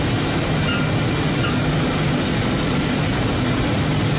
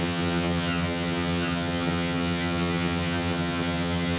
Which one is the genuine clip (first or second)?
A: first